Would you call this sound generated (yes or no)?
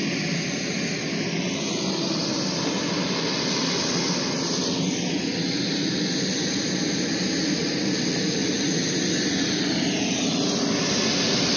no